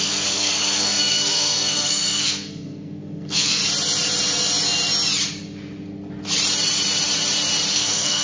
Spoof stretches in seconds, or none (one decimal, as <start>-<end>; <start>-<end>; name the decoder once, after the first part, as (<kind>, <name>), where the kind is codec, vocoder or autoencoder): 0.0-3.6 (codec, SNAC); 7.7-8.2